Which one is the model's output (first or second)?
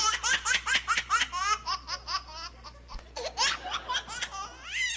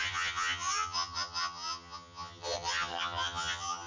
second